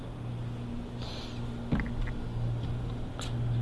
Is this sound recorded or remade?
recorded